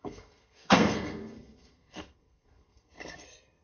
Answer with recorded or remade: remade